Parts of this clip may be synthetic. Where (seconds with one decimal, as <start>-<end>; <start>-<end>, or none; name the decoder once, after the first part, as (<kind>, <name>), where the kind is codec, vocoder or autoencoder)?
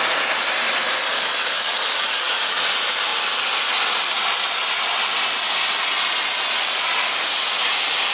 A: 1.1-2.6 (codec, DAC)